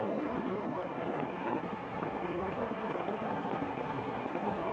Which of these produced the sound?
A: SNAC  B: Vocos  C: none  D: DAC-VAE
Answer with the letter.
A